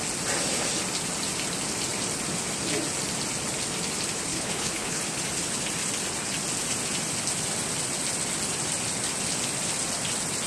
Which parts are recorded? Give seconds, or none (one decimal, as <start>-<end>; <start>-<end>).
0.0-4.3; 5.0-10.5